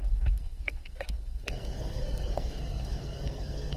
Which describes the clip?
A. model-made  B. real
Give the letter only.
A